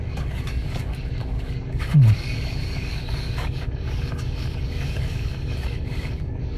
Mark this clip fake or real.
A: fake